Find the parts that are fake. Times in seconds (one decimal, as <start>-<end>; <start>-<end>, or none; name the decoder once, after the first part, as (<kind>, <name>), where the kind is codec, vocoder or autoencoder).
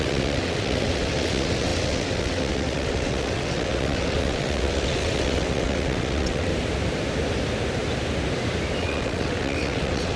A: 0.0-6.5 (vocoder, WaveNeXt); 8.8-10.2